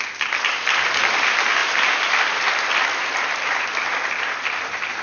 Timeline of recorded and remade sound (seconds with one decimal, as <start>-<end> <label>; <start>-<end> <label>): 0.0-5.0 recorded